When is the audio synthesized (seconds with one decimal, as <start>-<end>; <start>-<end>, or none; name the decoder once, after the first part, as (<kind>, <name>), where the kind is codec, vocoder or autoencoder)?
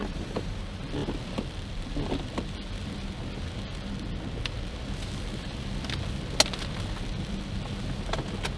0.0-0.6 (vocoder, BigVGAN v2)